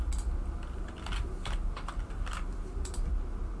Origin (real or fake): real